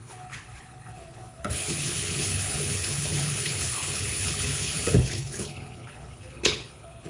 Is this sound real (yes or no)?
no